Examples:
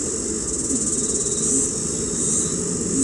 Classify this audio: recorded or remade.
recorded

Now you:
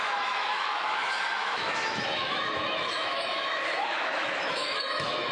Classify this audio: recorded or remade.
remade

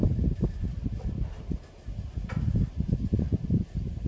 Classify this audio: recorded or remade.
recorded